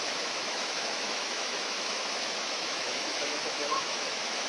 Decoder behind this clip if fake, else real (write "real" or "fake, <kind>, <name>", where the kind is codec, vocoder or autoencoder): fake, autoencoder, DAC-VAE